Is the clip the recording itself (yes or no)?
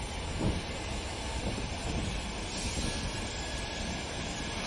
yes